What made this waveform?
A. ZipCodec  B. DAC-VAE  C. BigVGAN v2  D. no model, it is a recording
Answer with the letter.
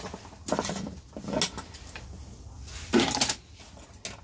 D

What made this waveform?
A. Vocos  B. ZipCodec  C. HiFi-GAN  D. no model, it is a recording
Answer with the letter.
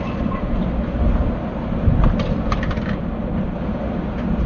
D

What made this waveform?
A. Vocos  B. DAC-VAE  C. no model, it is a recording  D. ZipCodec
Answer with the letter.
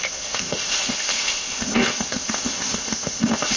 D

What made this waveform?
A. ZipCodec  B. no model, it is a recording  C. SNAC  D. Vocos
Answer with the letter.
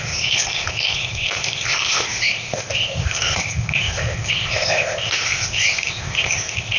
A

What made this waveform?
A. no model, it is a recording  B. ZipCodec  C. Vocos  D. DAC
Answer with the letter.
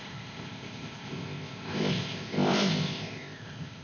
B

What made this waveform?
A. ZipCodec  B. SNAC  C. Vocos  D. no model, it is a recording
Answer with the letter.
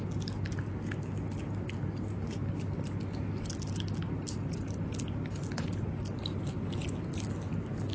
D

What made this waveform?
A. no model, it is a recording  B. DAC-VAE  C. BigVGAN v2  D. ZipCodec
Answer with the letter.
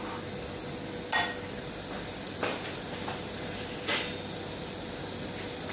A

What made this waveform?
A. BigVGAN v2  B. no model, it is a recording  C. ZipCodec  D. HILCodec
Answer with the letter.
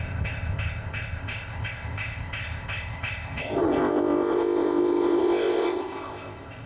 C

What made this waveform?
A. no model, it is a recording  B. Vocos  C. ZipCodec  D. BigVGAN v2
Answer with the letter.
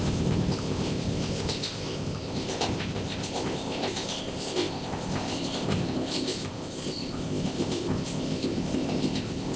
C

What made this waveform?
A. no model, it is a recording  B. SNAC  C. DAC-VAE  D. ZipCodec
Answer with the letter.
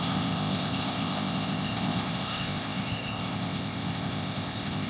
D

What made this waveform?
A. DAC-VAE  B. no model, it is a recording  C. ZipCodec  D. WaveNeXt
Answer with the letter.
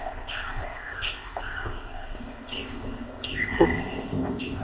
C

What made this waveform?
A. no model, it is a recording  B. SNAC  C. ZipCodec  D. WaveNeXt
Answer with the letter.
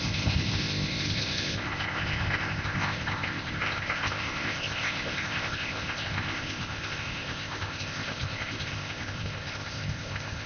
C